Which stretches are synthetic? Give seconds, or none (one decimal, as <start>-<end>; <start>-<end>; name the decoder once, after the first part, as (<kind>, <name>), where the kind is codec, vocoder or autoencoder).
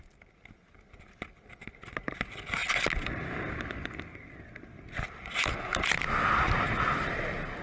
4.7-5.5 (vocoder, BigVGAN v2)